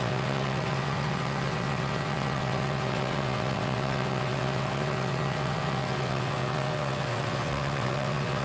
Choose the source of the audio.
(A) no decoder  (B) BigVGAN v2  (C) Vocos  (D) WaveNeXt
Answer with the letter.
D